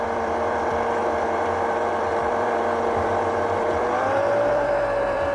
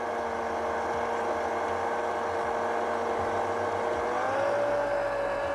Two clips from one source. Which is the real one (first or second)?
second